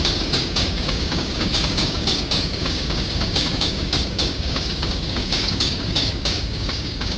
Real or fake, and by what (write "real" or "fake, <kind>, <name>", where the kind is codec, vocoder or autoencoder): fake, codec, DAC